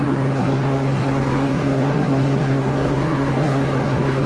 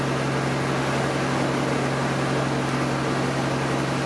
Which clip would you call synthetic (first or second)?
first